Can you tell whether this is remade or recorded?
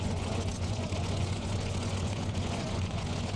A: remade